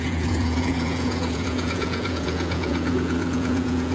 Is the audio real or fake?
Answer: fake